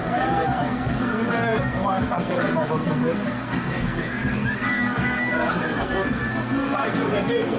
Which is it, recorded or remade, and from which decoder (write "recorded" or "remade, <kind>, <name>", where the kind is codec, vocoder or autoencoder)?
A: remade, codec, SNAC